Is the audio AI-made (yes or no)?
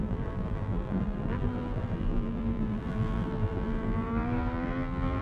yes